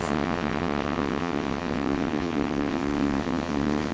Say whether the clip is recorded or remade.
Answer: remade